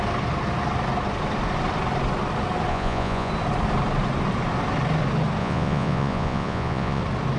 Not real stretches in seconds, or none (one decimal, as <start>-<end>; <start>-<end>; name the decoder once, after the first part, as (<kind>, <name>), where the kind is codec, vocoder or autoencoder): 2.7-3.3 (vocoder, Vocos); 5.4-7.0